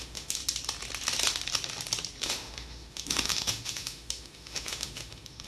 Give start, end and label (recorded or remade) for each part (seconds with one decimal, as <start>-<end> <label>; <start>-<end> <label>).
0.0-0.4 remade; 0.4-2.2 recorded; 2.2-5.5 remade